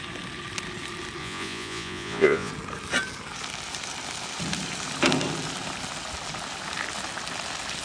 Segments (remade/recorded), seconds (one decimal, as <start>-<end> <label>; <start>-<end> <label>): 0.0-1.2 recorded; 1.2-2.5 remade; 2.5-7.8 recorded